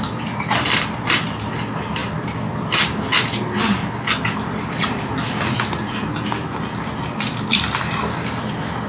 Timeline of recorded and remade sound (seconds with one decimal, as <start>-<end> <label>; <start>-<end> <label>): 0.0-8.9 recorded